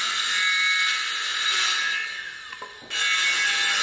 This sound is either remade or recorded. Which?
recorded